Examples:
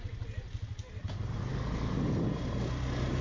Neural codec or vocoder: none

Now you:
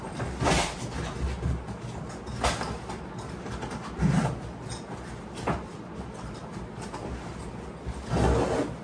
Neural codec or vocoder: none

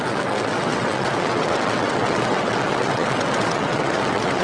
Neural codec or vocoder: vocoder, WaveNeXt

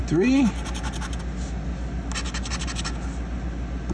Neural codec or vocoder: none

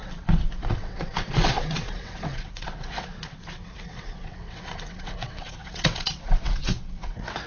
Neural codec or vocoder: vocoder, WaveNeXt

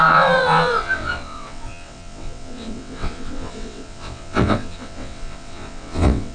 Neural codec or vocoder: vocoder, WaveNeXt